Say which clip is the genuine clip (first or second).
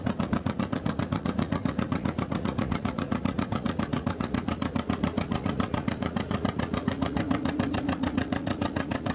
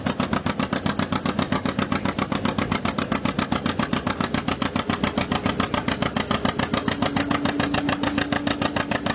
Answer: second